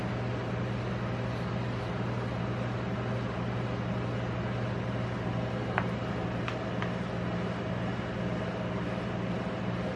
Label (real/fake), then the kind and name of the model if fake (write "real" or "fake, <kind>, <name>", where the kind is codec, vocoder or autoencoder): real